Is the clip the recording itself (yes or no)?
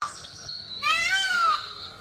no